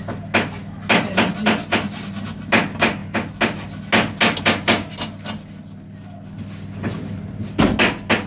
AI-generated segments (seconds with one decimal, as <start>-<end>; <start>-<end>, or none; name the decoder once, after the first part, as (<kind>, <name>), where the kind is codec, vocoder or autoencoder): none